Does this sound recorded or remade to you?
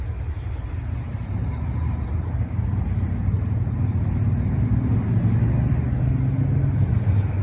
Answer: recorded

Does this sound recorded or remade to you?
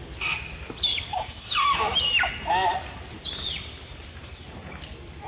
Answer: recorded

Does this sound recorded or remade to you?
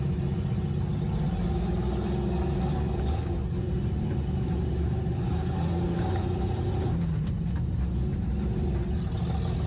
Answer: recorded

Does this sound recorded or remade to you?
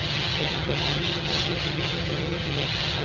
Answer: remade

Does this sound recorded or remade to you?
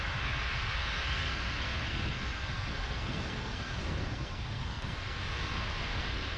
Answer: remade